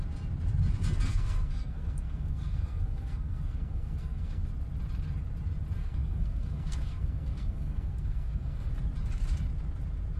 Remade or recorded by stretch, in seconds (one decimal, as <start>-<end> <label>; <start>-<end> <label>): 0.0-1.1 recorded; 1.1-4.5 remade; 4.5-5.8 recorded; 5.8-8.7 remade; 8.7-10.2 recorded